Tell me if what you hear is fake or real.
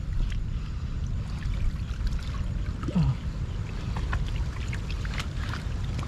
real